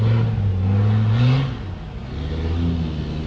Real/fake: real